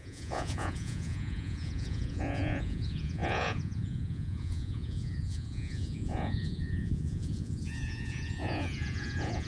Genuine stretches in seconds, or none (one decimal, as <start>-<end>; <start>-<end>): none